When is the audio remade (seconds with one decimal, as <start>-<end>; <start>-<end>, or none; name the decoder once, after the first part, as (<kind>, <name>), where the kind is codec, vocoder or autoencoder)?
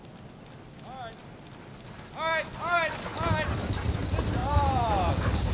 4.4-5.1 (vocoder, BigVGAN v2)